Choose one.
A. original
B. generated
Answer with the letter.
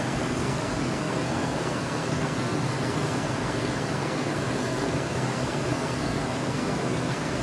B